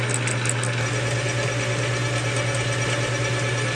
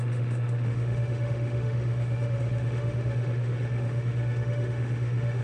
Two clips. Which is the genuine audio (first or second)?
first